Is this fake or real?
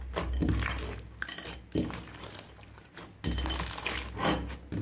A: real